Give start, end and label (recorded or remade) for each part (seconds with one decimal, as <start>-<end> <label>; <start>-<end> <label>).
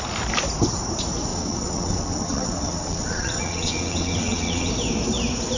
0.0-1.3 recorded; 1.3-4.7 remade; 4.7-5.6 recorded